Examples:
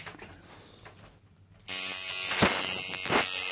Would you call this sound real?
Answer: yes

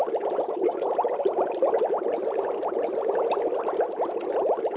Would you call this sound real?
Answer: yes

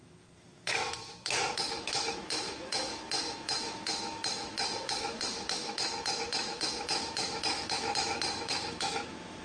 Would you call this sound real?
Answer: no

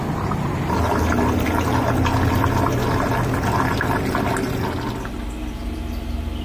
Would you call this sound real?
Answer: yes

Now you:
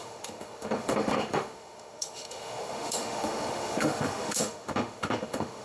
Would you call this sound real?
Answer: no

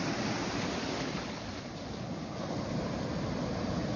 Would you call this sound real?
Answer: yes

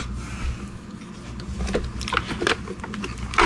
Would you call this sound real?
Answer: yes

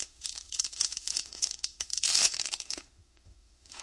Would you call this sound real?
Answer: no